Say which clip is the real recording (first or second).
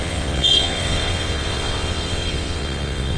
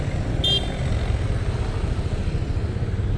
second